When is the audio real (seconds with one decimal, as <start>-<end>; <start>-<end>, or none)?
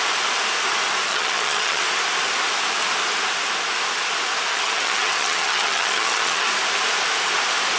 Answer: 0.0-1.1; 1.8-4.5; 6.5-7.8